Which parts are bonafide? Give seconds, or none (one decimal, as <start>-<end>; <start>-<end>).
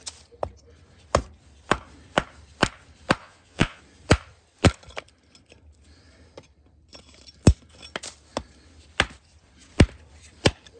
0.0-3.2; 3.8-10.8